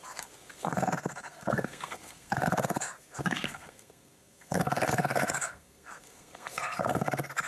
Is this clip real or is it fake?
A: fake